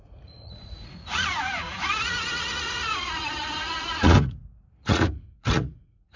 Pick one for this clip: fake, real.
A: fake